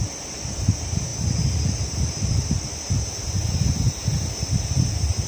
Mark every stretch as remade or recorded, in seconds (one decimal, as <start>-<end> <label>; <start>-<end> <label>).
0.0-5.3 recorded